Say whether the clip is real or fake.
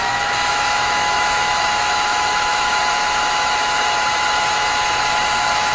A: fake